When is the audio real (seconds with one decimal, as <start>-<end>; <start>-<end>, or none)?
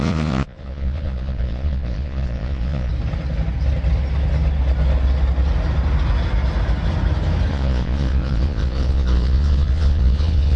2.9-7.5